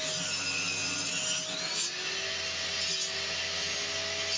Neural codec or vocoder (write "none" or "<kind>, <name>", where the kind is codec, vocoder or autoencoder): none